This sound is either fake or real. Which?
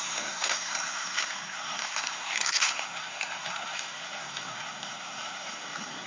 fake